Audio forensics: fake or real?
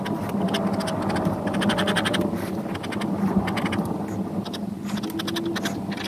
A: real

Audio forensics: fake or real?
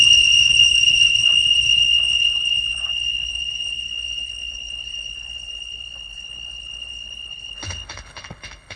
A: fake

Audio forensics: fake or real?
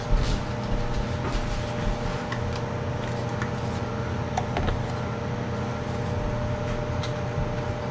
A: real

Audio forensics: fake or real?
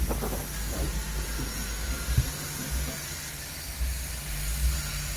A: real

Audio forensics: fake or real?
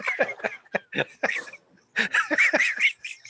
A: real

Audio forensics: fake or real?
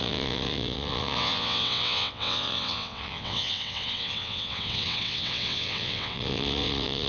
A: fake